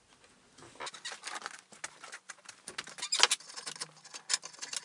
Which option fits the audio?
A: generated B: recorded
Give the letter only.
B